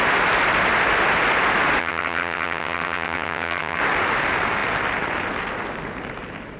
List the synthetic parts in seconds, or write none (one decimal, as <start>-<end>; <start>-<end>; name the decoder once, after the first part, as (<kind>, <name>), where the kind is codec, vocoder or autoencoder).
1.8-3.8 (vocoder, HiFi-GAN)